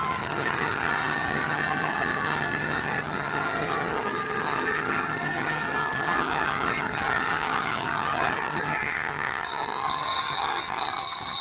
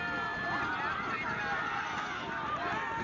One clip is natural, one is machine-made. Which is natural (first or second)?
second